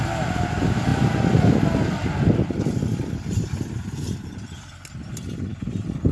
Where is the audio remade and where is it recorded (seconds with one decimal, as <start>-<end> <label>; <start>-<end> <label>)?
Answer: 0.0-6.1 recorded